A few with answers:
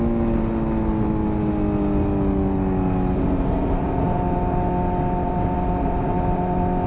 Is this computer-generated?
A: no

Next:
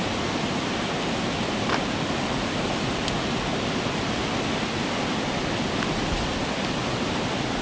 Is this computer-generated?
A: no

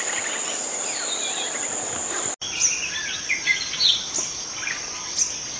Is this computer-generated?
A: no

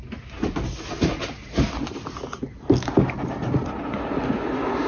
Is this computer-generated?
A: no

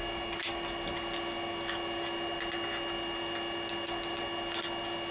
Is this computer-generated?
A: no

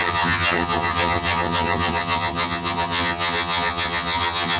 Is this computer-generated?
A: yes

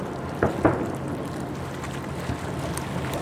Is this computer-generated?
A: no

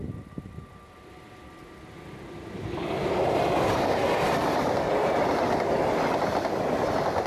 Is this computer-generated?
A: no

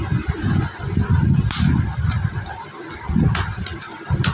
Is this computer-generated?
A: no